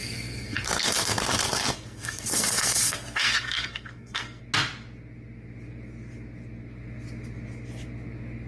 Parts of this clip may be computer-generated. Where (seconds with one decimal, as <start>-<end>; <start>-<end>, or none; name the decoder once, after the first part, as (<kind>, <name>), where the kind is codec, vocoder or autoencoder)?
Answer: 0.0-4.4 (codec, SNAC)